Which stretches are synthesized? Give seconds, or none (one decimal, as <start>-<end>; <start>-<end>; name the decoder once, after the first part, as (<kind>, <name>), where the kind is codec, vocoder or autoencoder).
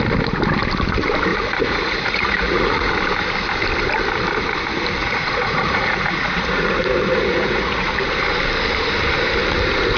1.3-2.9 (vocoder, Vocos); 5.0-7.9